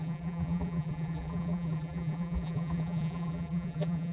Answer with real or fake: fake